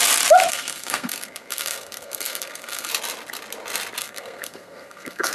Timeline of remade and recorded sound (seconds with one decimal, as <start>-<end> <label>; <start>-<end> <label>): 0.0-0.5 recorded; 0.5-2.9 remade; 2.9-4.0 recorded; 4.0-5.3 remade

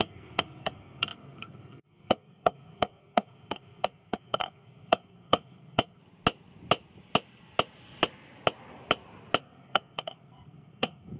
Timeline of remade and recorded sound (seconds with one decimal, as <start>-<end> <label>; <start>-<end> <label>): 0.0-6.0 remade; 6.0-9.4 recorded; 9.4-11.2 remade

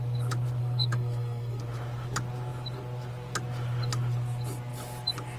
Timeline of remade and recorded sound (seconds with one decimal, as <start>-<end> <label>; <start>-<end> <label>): 0.0-0.6 recorded; 0.6-1.6 remade; 1.6-5.4 recorded

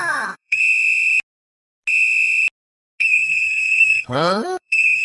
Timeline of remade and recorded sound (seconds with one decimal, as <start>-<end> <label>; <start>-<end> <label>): 0.0-0.6 remade; 0.6-3.0 recorded; 3.0-5.0 remade

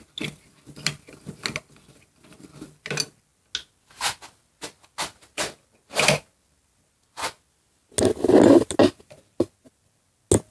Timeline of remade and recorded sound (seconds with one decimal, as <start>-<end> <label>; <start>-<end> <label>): 0.0-10.5 recorded

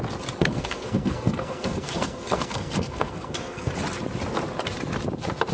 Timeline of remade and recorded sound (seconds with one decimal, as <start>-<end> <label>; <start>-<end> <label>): 0.0-0.4 recorded; 0.4-3.7 remade; 3.7-5.5 recorded